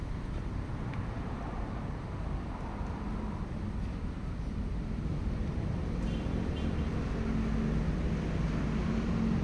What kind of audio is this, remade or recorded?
recorded